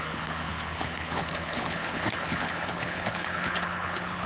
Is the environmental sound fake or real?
fake